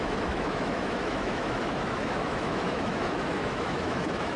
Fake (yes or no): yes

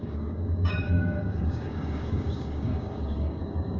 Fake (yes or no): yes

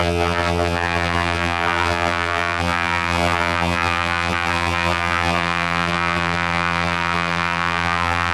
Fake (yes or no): yes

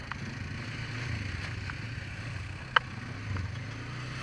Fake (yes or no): no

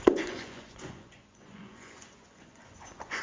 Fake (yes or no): yes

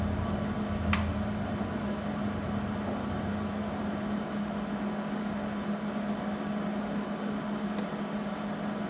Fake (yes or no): no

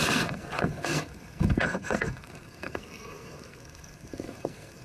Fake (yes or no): yes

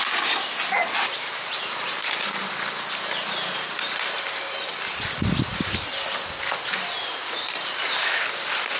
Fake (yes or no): no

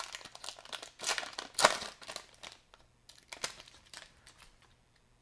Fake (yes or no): no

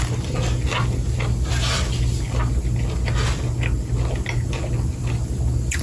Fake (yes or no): no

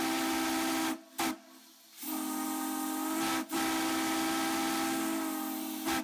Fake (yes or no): no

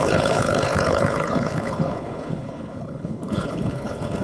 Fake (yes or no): yes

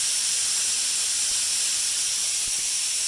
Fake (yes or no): no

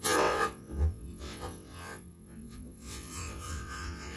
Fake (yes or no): yes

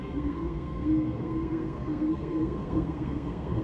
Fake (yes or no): yes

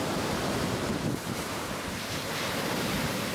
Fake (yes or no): yes